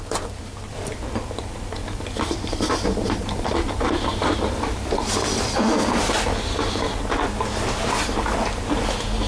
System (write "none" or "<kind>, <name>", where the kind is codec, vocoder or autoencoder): vocoder, BigVGAN v2